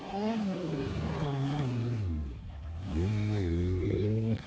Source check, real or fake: fake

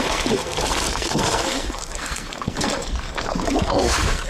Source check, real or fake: fake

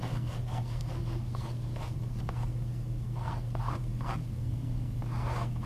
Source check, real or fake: fake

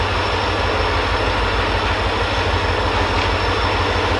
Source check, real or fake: real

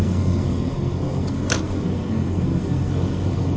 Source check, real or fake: fake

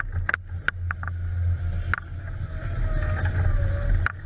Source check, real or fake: real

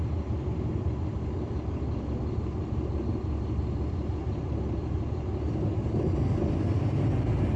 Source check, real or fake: real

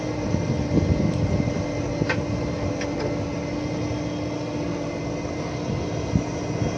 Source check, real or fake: real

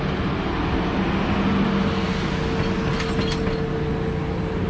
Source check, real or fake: real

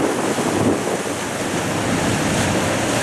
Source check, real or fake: real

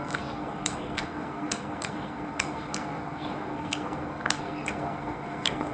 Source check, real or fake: fake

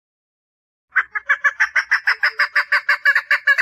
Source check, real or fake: real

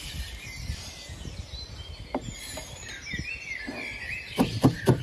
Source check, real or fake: real